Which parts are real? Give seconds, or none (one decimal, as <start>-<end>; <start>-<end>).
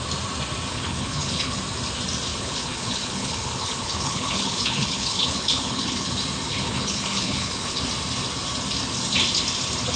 0.0-0.7; 1.6-2.3; 6.1-6.5; 7.8-10.0